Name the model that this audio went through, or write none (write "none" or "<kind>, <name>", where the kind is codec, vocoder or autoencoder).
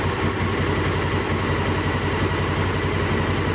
none